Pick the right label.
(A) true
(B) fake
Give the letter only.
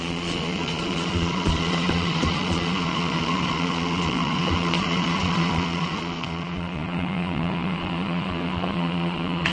B